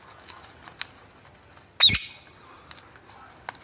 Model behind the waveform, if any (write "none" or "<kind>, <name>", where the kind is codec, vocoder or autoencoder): none